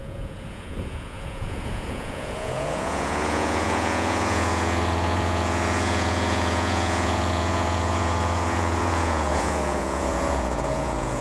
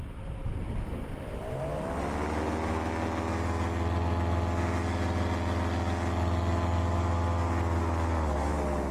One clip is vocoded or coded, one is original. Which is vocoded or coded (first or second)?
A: first